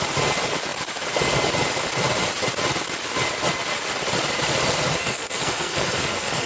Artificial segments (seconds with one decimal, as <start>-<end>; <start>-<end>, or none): 5.0-6.5